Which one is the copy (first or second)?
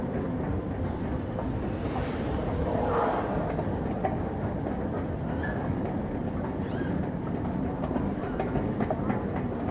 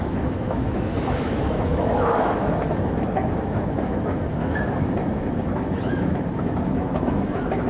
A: second